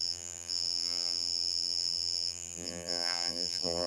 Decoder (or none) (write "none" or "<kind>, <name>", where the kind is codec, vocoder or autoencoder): vocoder, BigVGAN v2